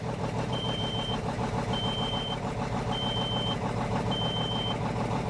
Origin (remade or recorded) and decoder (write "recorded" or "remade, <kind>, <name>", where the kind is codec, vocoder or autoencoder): remade, vocoder, BigVGAN v2